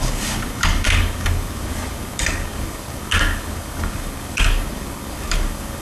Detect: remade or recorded remade